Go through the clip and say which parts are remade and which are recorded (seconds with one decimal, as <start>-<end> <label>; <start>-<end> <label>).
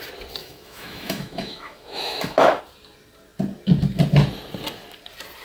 0.0-0.4 recorded; 0.4-2.6 remade; 2.6-5.4 recorded